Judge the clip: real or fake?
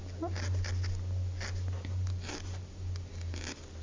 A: real